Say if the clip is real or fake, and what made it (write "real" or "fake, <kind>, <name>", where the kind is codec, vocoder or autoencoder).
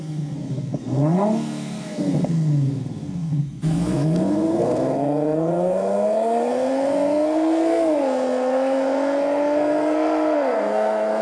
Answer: fake, codec, SNAC